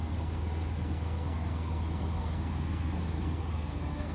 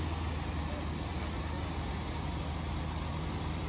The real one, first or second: second